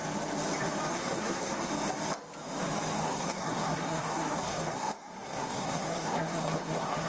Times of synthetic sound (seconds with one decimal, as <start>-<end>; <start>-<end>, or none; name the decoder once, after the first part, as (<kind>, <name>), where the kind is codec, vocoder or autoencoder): 0.9-1.7 (codec, SNAC); 3.0-7.1